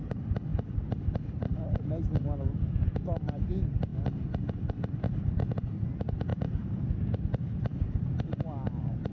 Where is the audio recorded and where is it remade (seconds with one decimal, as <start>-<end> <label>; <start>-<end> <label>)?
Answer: 0.0-6.3 recorded; 6.3-6.9 remade; 6.9-9.1 recorded